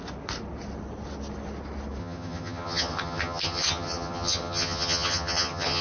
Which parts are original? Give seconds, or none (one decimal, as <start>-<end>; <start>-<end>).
0.0-2.0